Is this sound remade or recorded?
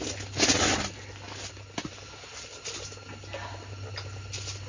recorded